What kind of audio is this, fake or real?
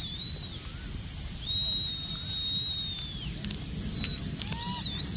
real